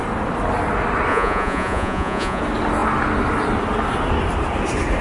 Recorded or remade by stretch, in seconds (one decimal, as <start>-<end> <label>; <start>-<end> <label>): 0.0-1.1 recorded; 1.1-2.4 remade; 2.4-5.0 recorded